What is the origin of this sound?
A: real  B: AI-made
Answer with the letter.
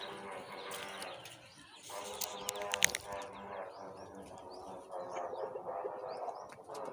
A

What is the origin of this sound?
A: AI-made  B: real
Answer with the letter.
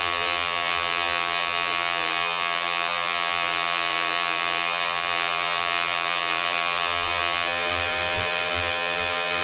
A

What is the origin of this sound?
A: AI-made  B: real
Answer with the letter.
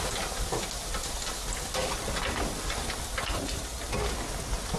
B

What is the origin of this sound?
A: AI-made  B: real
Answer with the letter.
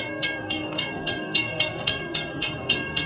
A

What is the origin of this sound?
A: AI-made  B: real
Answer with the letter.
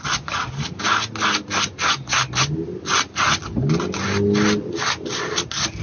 B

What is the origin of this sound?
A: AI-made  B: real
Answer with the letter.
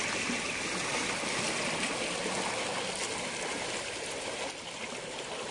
B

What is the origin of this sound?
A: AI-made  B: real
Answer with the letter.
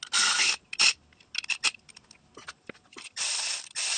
B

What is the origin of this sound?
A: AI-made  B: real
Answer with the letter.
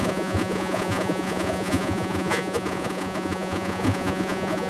A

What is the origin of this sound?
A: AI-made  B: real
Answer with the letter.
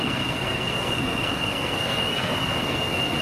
A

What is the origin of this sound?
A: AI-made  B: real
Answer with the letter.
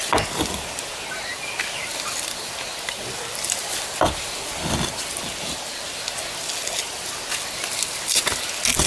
B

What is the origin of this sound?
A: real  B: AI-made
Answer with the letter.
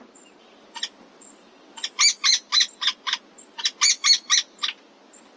A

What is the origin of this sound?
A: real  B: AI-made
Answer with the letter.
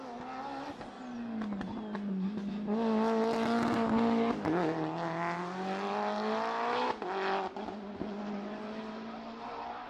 A